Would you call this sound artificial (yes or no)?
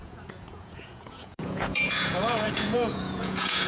yes